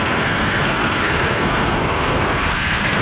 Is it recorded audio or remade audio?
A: remade